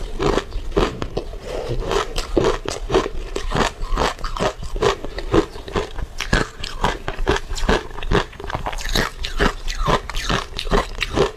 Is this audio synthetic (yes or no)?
no